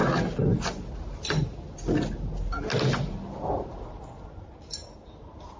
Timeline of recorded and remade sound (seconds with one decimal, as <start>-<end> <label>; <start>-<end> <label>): 0.0-5.6 recorded